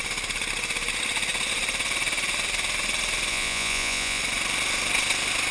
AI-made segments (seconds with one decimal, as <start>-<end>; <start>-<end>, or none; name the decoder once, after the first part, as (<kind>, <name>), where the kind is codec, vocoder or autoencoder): 3.3-4.2 (vocoder, Vocos)